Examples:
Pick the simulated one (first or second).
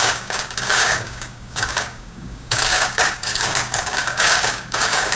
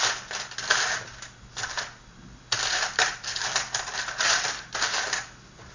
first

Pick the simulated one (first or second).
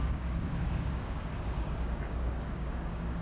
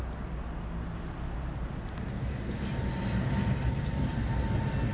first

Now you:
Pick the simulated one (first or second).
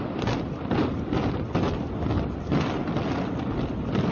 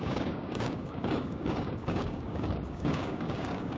second